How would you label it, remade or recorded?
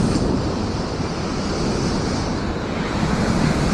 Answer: recorded